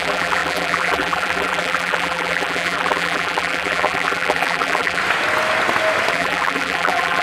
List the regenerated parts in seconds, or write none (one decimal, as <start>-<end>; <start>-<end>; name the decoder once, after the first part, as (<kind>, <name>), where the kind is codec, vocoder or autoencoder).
0.0-5.0 (vocoder, BigVGAN v2); 6.1-7.2